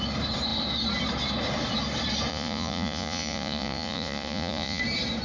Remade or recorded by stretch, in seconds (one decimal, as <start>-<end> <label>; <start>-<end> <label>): 0.0-2.3 recorded; 2.3-4.8 remade; 4.8-5.2 recorded